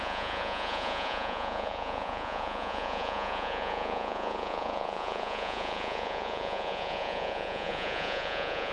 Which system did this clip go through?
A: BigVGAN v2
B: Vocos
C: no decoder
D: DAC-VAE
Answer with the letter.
B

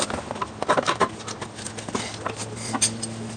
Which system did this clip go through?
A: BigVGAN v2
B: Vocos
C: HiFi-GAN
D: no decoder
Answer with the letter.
D